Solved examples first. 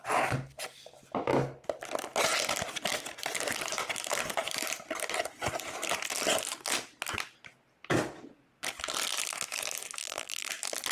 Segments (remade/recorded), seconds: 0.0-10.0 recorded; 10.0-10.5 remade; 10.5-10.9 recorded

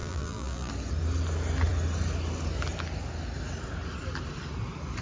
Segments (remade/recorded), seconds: 0.0-0.7 remade; 0.7-5.0 recorded

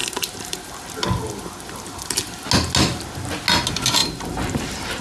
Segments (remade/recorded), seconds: 0.0-0.7 remade; 0.7-4.0 recorded; 4.0-5.0 remade

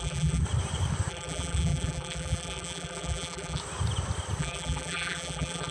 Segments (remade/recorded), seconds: 0.0-0.4 remade; 0.4-1.1 recorded; 1.1-3.6 remade; 3.6-4.4 recorded; 4.4-5.7 remade

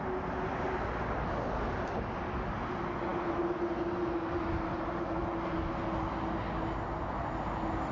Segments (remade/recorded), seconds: 0.0-7.9 recorded

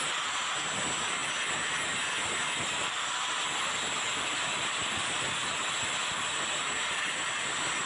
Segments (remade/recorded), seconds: 0.0-7.9 recorded

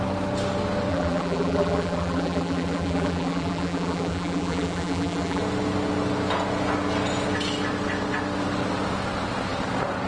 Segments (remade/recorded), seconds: 0.0-0.9 recorded; 0.9-5.4 remade; 5.4-10.1 recorded